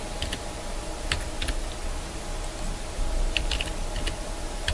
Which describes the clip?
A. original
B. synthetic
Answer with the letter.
A